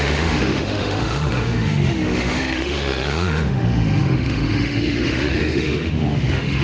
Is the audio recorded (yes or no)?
no